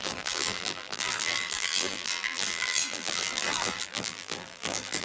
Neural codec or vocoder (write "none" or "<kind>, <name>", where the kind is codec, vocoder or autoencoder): vocoder, BigVGAN v2